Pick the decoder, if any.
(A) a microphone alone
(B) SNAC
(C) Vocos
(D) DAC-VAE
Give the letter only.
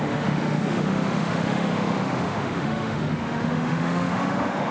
D